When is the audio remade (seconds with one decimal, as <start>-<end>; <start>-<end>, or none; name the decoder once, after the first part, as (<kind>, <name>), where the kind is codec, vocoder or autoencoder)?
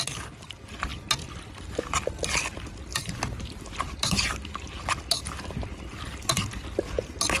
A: 2.9-4.3 (vocoder, BigVGAN v2)